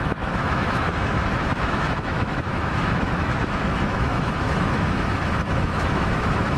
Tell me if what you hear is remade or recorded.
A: remade